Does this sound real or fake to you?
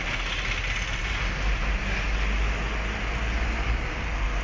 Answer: real